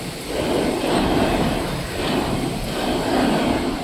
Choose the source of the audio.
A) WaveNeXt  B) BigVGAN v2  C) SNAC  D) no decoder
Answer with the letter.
D